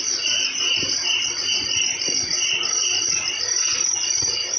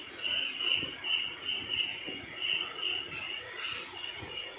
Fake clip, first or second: second